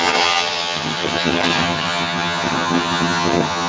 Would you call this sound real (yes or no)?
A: no